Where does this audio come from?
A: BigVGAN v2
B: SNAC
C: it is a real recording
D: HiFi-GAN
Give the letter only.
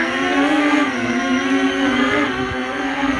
B